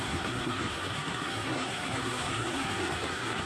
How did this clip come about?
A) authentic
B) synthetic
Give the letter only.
B